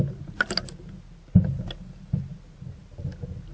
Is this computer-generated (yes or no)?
no